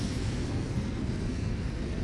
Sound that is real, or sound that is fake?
fake